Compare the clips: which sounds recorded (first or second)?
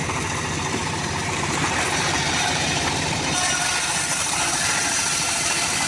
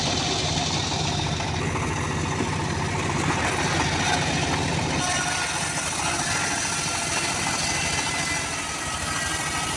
second